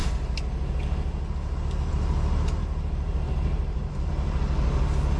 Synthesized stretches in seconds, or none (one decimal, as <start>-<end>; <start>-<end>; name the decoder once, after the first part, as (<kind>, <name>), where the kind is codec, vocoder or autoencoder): 2.6-4.1 (vocoder, BigVGAN v2)